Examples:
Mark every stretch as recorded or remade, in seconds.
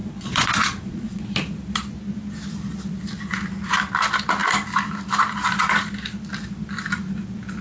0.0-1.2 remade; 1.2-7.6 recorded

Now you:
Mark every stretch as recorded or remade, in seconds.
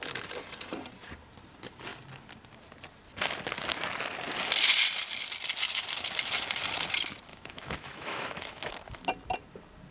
0.0-7.3 recorded; 7.3-8.7 remade; 8.7-9.9 recorded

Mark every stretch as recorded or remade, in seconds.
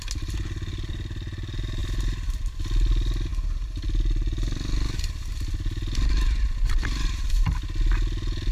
0.0-8.5 recorded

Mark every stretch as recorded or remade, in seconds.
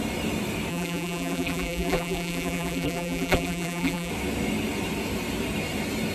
0.0-0.7 recorded; 0.7-4.1 remade; 4.1-6.1 recorded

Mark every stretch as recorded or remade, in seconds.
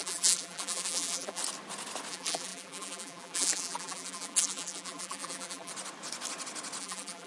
0.0-1.4 remade; 1.4-2.1 recorded; 2.1-5.7 remade; 5.7-6.8 recorded; 6.8-7.3 remade